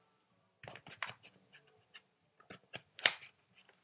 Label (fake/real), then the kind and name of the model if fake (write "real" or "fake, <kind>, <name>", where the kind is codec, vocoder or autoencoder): fake, vocoder, BigVGAN v2